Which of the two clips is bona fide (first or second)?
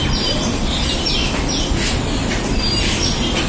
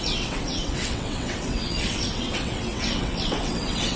first